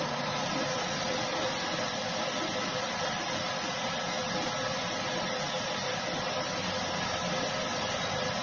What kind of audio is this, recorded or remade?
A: recorded